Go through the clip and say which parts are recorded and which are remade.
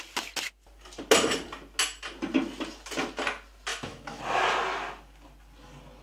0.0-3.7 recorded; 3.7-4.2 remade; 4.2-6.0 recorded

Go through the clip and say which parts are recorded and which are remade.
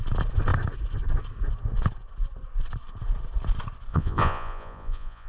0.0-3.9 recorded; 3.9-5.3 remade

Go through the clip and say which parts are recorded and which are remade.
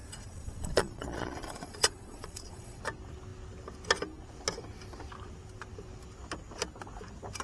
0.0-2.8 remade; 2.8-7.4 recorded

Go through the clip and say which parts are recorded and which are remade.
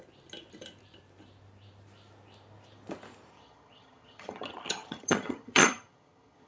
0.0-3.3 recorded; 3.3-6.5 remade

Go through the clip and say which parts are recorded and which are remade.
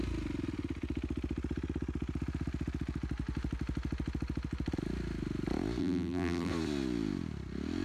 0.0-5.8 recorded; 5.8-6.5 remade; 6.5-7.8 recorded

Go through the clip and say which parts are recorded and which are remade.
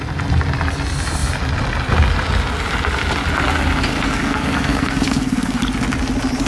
0.0-3.9 recorded; 3.9-5.6 remade; 5.6-6.5 recorded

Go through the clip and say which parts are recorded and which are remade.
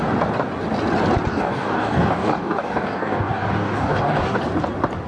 0.0-1.3 recorded; 1.3-4.4 remade; 4.4-5.1 recorded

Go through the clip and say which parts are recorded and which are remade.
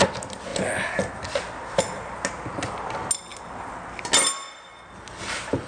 0.0-5.7 recorded